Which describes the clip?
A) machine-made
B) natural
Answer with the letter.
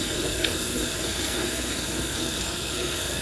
A